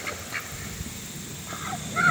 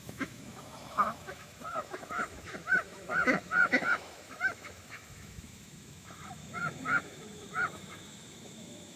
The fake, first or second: second